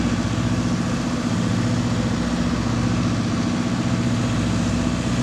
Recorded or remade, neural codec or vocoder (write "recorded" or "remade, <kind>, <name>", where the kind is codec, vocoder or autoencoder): recorded